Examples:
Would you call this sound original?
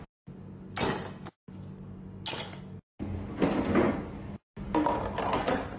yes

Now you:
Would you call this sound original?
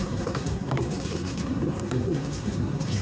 no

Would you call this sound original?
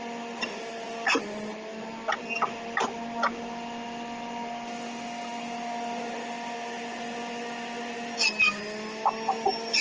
yes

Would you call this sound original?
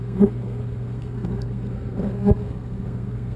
no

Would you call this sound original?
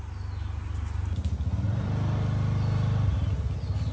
yes